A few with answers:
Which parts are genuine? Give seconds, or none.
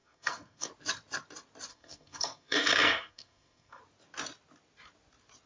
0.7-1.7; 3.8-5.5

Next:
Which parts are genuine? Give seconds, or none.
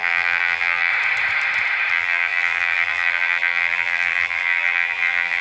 0.9-1.9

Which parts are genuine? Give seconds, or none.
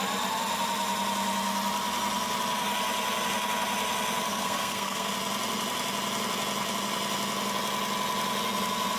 0.0-4.3; 5.1-9.0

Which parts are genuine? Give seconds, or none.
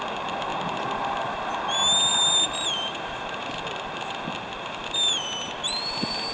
0.0-0.5; 1.5-2.1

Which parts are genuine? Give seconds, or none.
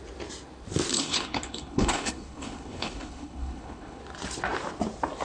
0.0-0.9; 4.0-5.2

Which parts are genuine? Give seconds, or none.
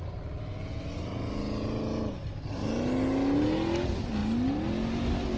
0.0-5.4